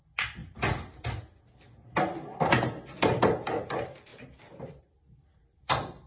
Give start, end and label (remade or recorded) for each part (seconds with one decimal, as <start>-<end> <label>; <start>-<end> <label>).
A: 0.0-4.1 recorded; 4.1-6.1 remade